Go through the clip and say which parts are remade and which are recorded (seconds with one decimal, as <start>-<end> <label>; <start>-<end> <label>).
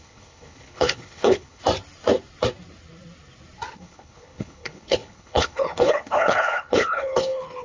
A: 0.0-1.6 remade; 1.6-3.7 recorded; 3.7-7.6 remade